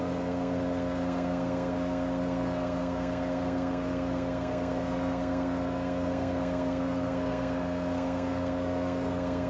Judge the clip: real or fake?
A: fake